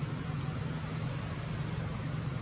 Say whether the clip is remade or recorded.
recorded